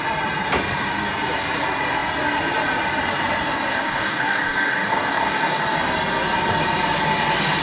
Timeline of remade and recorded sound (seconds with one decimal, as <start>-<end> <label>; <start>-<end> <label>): 0.0-3.7 recorded; 3.7-5.6 remade; 5.6-7.6 recorded